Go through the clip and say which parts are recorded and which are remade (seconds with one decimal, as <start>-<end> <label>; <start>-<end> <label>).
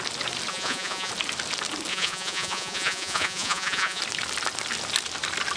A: 0.0-0.5 recorded; 0.5-1.1 remade; 1.1-1.9 recorded; 1.9-4.0 remade; 4.0-5.6 recorded